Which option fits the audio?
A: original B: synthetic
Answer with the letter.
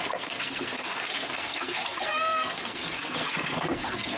B